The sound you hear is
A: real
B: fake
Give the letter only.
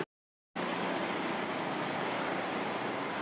A